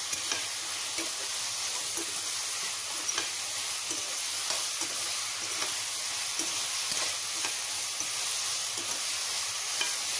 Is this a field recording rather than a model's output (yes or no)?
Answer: yes